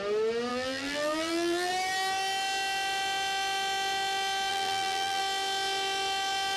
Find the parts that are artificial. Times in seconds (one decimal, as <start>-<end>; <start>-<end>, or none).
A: 0.5-1.7; 4.5-5.2